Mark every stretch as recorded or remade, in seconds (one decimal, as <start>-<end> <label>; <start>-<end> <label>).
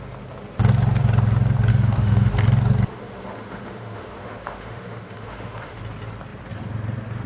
0.0-1.7 recorded; 1.7-2.3 remade; 2.3-2.9 recorded; 2.9-5.8 remade; 5.8-7.3 recorded